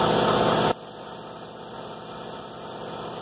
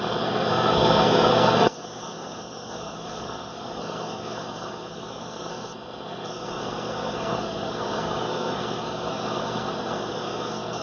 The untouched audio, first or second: first